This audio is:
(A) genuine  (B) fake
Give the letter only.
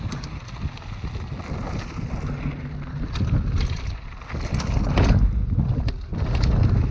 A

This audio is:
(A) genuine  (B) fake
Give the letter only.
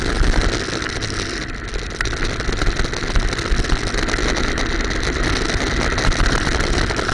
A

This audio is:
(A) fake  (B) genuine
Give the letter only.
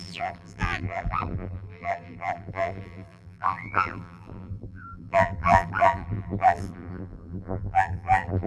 A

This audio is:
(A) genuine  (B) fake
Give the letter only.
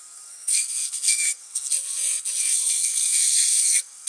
B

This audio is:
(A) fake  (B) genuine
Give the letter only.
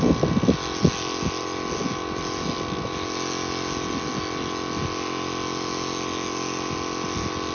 B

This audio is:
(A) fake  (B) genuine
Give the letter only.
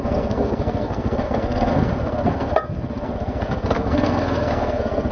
A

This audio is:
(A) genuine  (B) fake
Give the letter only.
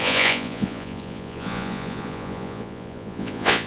B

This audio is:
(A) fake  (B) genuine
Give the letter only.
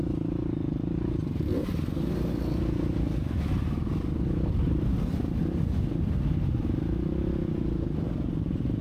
B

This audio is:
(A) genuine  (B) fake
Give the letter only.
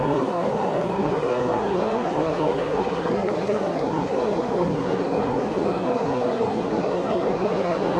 B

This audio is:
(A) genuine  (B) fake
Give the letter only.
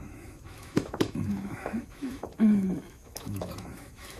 B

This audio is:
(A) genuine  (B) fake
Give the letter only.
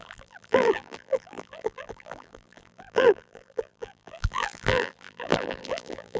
B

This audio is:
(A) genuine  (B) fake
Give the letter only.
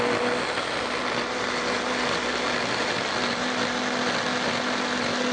A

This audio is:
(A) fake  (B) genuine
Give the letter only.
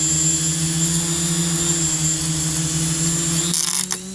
B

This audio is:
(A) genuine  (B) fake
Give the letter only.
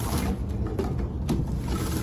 A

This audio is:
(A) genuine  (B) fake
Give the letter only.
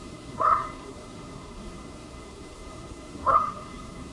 B